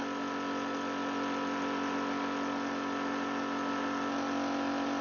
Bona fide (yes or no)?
yes